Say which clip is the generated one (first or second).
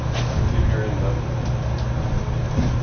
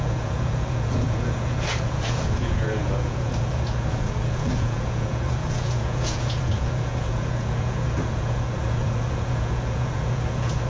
second